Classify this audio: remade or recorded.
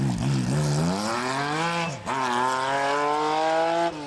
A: recorded